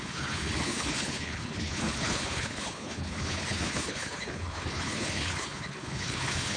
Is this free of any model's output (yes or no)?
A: no